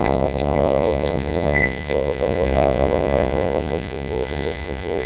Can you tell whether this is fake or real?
fake